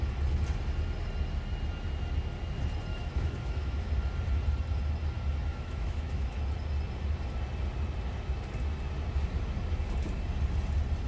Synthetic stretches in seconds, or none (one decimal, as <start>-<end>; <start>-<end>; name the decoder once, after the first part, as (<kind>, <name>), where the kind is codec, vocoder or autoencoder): 2.9-3.9 (autoencoder, DAC-VAE); 5.5-6.4